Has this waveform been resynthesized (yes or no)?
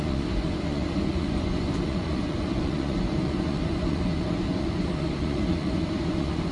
yes